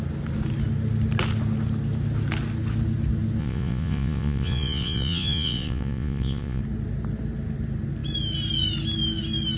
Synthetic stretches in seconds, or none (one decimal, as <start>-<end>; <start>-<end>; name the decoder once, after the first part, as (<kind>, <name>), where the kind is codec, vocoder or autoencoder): 3.4-6.6 (vocoder, Vocos)